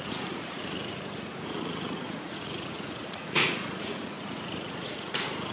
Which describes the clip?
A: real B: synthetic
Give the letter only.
B